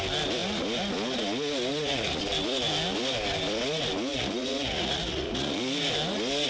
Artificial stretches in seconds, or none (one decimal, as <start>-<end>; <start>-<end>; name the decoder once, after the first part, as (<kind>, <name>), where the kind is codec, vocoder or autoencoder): 1.7-2.2 (vocoder, Vocos); 4.1-5.6